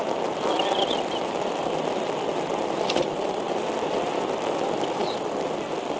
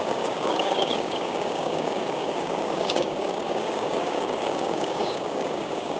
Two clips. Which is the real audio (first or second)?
first